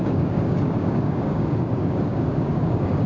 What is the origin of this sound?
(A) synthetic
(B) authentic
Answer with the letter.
A